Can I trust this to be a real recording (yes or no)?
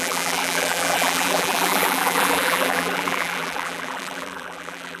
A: no